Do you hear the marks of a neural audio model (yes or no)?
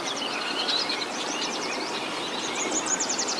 yes